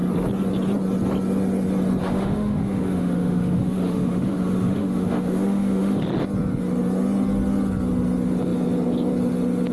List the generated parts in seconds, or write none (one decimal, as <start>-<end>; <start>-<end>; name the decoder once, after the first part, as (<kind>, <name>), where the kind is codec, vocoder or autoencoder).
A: 2.0-6.0 (autoencoder, DAC-VAE)

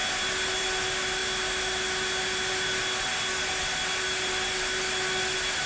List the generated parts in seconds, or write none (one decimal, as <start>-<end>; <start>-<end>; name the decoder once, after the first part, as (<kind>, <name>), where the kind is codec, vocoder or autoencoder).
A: none

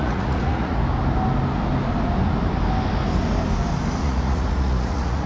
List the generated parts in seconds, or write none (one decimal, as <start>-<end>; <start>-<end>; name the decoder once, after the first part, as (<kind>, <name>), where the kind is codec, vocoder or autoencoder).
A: 0.0-0.8 (vocoder, Vocos); 4.0-5.3

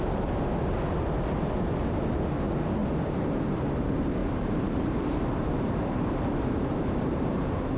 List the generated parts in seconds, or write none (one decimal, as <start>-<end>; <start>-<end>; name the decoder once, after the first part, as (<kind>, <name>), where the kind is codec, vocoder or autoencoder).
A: 2.8-3.8 (vocoder, BigVGAN v2); 4.2-7.8

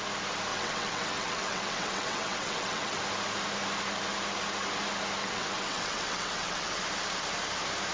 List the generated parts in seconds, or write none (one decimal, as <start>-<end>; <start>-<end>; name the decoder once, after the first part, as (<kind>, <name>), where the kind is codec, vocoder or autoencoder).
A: 0.5-3.0 (vocoder, WaveNeXt); 5.2-6.8

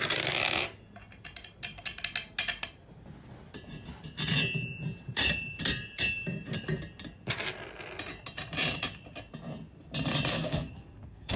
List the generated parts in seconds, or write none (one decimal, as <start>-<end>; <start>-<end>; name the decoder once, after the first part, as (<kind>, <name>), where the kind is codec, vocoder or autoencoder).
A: 10.3-11.4 (codec, SNAC)

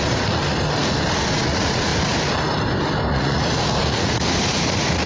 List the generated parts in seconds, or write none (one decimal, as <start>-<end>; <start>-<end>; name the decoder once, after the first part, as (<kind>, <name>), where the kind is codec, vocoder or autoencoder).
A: 0.0-0.4 (vocoder, Vocos); 1.3-1.9; 3.1-5.1